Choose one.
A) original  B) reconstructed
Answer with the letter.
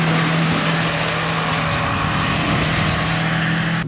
A